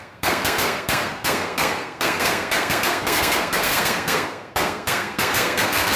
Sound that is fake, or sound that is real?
fake